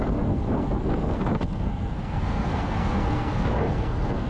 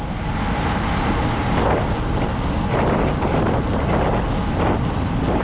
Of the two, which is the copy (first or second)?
first